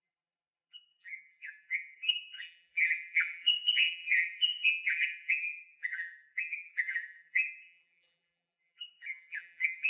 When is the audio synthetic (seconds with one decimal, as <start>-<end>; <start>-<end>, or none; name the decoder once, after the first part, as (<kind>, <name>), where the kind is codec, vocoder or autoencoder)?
0.0-9.9 (vocoder, BigVGAN v2)